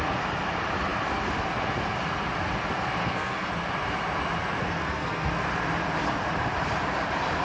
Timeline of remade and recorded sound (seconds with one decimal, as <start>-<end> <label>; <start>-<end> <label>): 0.0-3.0 recorded; 3.0-3.5 remade; 3.5-4.6 recorded; 4.6-5.3 remade; 5.3-7.4 recorded